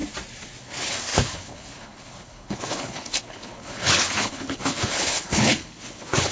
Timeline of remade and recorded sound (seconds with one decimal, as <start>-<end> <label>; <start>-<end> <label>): 0.0-0.6 recorded; 0.6-6.3 remade